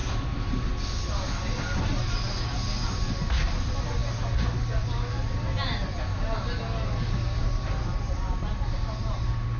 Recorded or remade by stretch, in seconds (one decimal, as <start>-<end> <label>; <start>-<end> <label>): 0.0-0.7 remade; 0.7-9.6 recorded